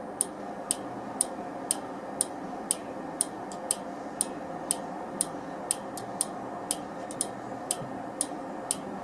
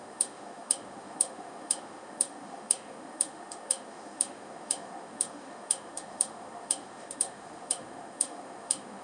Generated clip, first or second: second